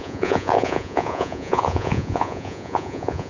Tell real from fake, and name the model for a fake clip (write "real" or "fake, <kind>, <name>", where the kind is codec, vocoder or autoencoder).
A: fake, vocoder, Vocos